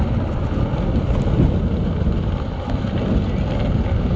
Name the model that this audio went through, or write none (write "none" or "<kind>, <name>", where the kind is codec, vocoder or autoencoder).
none